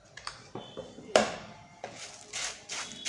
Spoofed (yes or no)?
no